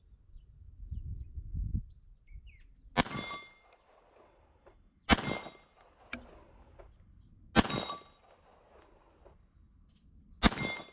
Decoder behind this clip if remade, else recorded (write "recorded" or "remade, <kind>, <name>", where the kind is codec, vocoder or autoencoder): recorded